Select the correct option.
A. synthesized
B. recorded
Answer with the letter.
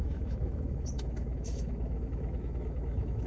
A